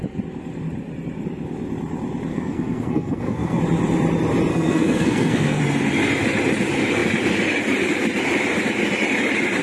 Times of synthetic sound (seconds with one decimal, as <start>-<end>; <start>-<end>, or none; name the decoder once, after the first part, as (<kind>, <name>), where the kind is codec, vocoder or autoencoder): 2.3-3.6 (codec, SNAC); 4.5-5.6